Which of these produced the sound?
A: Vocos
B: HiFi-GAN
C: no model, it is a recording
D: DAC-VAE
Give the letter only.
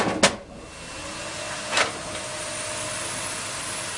C